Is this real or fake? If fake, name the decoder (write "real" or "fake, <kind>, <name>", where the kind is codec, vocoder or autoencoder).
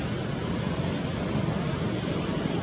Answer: real